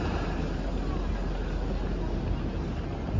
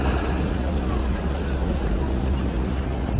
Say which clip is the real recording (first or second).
first